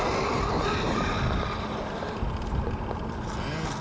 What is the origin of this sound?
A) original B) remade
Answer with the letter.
A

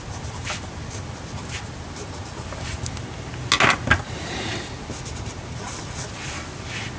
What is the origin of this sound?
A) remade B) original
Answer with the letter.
B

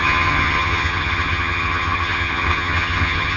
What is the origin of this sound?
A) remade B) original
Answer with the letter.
A